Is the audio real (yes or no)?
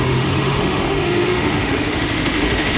no